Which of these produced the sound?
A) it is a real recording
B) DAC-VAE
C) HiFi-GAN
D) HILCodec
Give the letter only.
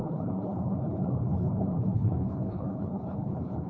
D